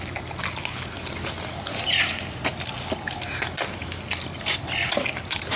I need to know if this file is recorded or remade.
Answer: recorded